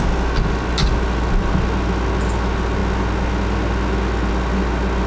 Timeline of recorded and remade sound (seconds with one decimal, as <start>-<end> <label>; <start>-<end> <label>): 0.0-5.1 recorded